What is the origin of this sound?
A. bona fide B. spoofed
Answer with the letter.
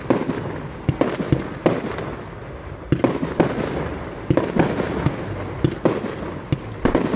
A